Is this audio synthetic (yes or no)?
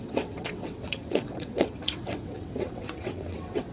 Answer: yes